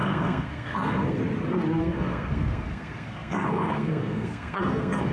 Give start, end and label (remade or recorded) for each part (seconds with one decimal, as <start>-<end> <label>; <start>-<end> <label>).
0.0-1.2 remade; 1.2-1.8 recorded; 1.8-5.1 remade